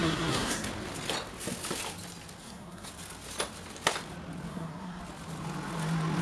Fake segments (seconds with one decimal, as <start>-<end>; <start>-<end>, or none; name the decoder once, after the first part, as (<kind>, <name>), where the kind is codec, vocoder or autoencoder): 0.0-0.7 (codec, SNAC); 2.4-2.9; 4.5-5.0